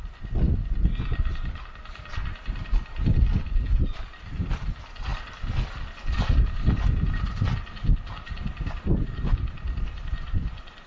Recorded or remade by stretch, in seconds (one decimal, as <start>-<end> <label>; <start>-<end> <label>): 0.0-2.9 recorded; 2.9-3.5 remade; 3.5-5.1 recorded; 5.1-6.4 remade; 6.4-10.9 recorded